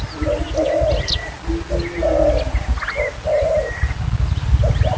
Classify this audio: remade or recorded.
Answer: recorded